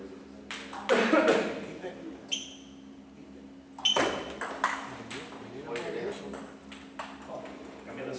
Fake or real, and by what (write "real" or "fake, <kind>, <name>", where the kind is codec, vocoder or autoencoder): real